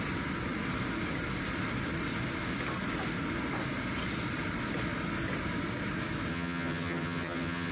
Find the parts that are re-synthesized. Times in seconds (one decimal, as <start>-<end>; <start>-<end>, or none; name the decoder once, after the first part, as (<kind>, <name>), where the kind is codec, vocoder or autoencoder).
6.3-7.7 (vocoder, HiFi-GAN)

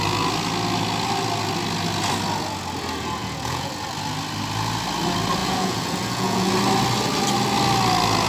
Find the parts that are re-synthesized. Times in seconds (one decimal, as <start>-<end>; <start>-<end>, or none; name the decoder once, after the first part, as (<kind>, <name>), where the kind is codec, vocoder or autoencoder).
3.2-3.7 (vocoder, Vocos); 5.4-6.5

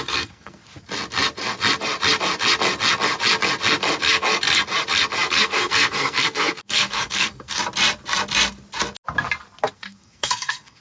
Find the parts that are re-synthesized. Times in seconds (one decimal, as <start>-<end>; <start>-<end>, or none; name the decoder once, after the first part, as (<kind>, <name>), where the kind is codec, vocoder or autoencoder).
0.0-0.6 (codec, SNAC); 5.3-7.6; 9.7-10.8

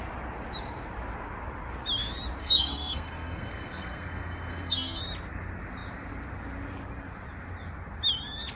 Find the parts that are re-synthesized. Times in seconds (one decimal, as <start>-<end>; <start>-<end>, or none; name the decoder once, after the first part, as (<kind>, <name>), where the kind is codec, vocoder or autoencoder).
2.4-5.0 (codec, SNAC)

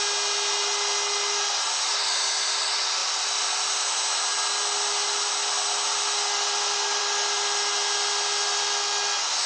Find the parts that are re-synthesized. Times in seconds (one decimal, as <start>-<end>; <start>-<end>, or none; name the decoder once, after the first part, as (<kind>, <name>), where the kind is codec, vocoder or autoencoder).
none

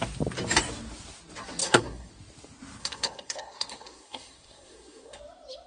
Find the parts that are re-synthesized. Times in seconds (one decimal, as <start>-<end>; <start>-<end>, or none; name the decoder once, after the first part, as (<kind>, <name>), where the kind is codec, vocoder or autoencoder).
1.6-2.1 (codec, SNAC); 2.8-5.2